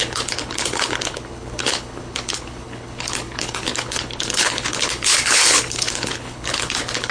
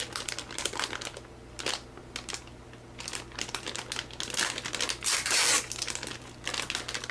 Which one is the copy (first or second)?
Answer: first